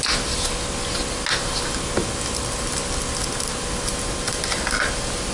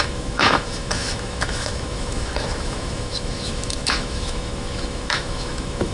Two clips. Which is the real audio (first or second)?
first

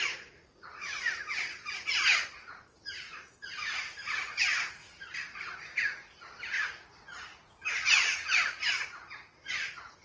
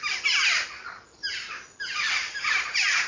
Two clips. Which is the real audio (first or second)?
second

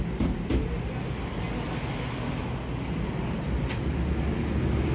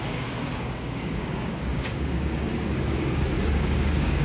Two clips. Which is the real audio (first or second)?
first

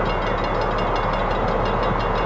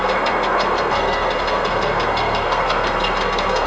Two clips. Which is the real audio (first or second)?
first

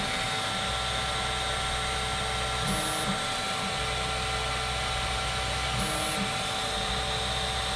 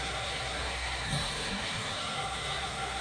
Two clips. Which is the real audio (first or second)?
first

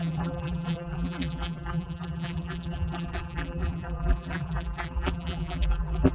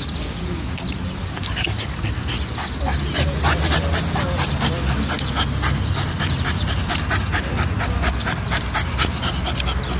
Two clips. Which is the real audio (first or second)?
second